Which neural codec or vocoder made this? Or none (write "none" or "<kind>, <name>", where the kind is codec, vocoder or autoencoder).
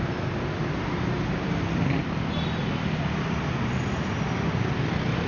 none